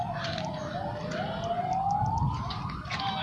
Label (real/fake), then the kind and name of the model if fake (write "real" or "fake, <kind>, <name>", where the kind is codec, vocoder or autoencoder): real